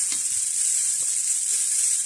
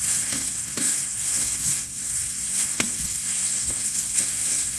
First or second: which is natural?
first